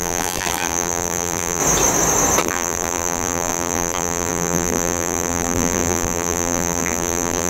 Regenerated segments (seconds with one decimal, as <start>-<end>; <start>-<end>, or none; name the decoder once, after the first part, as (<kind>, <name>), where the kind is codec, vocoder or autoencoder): 0.0-1.6 (vocoder, BigVGAN v2); 2.4-7.5